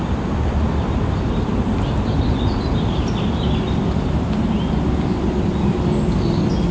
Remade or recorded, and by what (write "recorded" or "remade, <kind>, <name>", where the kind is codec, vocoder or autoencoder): recorded